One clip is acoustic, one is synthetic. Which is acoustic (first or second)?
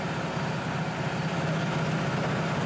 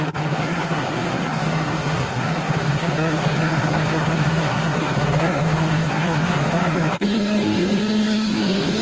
first